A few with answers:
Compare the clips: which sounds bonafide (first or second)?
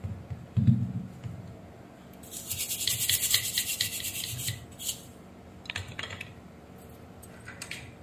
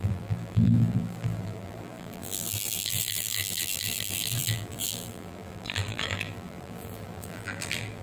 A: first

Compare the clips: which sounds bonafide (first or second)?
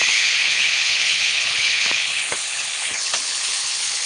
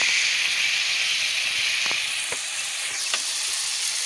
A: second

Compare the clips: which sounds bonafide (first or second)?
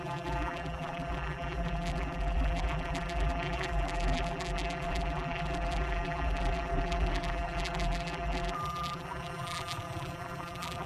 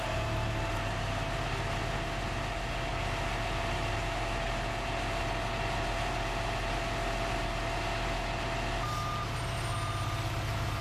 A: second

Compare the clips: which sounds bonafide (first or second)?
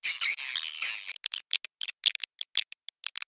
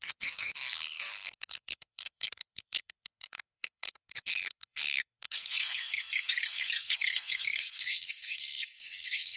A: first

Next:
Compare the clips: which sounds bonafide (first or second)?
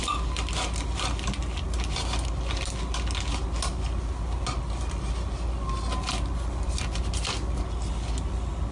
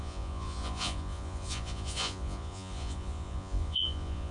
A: first